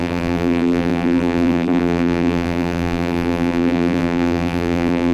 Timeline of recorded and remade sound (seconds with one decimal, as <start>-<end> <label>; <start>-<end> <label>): 0.0-5.1 remade